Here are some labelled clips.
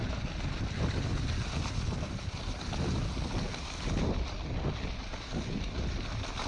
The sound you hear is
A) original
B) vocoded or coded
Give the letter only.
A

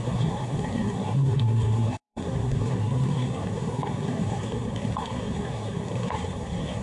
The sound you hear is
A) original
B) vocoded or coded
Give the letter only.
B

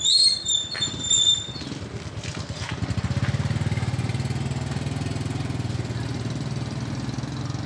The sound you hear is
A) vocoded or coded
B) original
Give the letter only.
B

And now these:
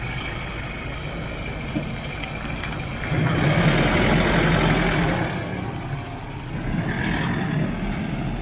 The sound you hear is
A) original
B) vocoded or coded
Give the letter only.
A